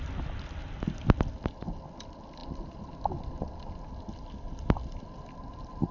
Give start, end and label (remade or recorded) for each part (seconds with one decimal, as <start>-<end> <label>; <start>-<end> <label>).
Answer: 0.0-5.9 recorded